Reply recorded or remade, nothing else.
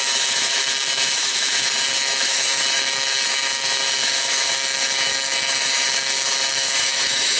remade